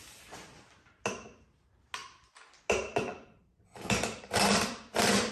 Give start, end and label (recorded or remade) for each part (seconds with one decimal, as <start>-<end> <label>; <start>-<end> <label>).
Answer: 0.0-5.3 recorded